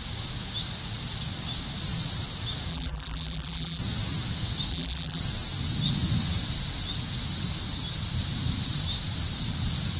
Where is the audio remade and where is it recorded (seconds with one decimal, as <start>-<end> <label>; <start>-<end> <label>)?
0.0-2.7 recorded; 2.7-3.8 remade; 3.8-4.7 recorded; 4.7-5.2 remade; 5.2-10.0 recorded